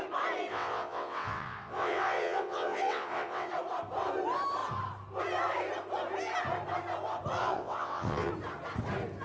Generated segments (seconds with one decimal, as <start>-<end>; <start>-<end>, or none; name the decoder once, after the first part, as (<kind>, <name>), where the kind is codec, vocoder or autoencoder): 0.5-3.5 (vocoder, WaveNeXt); 7.4-8.3